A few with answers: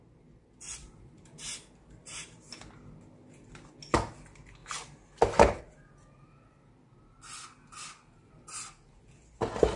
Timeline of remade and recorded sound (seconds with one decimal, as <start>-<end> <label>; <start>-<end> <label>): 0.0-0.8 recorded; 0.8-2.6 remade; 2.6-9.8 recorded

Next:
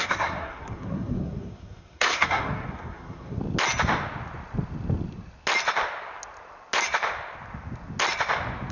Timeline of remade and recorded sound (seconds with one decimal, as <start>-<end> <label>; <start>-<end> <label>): 0.0-3.4 remade; 3.4-8.7 recorded

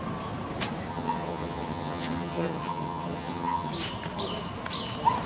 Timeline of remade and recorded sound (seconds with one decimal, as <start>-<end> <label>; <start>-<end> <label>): 0.0-0.9 recorded; 0.9-3.7 remade; 3.7-5.3 recorded

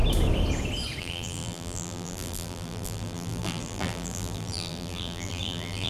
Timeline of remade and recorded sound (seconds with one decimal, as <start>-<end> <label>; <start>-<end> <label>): 0.0-1.0 recorded; 1.0-5.9 remade

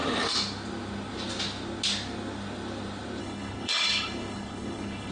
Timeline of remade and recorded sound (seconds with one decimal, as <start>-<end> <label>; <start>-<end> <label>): 0.0-3.2 recorded; 3.2-5.1 remade